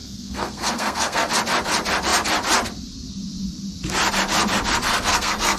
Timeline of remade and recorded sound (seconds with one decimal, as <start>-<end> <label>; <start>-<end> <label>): 0.0-1.3 remade; 1.3-4.9 recorded; 4.9-5.6 remade